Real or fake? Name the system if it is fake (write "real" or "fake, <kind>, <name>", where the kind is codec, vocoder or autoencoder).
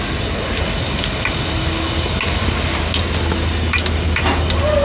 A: real